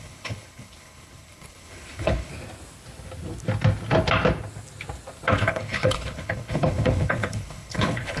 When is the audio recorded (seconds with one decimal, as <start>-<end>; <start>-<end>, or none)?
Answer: 2.3-5.3